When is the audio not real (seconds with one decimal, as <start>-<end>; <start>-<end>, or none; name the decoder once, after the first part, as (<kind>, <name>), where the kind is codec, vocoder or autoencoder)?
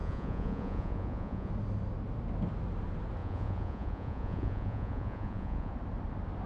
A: 0.0-1.5 (vocoder, Vocos); 3.2-5.7